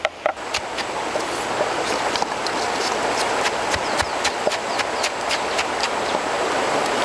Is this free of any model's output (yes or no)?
yes